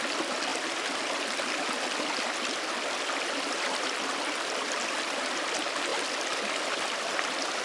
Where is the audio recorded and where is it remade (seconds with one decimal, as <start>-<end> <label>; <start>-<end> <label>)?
0.0-7.6 recorded